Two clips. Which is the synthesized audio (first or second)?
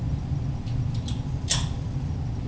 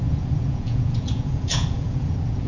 second